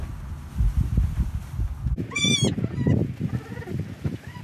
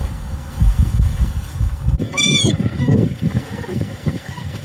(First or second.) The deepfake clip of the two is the second